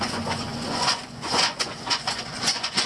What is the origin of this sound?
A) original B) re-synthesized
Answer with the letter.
B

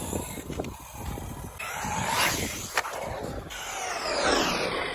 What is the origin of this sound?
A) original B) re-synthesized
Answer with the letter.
A